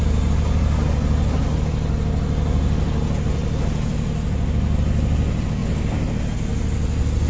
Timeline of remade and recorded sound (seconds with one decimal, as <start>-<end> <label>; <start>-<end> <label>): 0.0-7.3 recorded